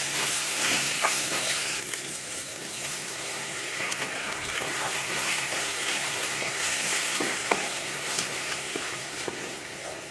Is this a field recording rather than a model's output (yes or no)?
no